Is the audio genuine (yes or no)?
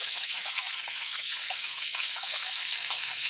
no